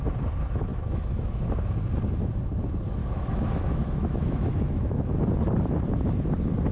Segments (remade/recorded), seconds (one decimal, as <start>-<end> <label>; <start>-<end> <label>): 0.0-0.7 recorded; 0.7-1.5 remade; 1.5-3.0 recorded; 3.0-5.1 remade; 5.1-6.7 recorded